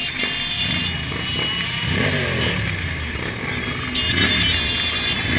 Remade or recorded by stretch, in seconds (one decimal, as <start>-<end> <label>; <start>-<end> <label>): 0.0-1.3 recorded; 1.3-4.5 remade; 4.5-5.4 recorded